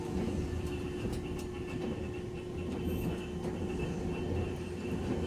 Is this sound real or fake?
real